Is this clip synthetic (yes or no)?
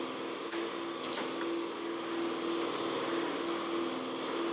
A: no